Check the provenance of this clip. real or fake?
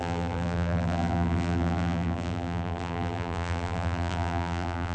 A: fake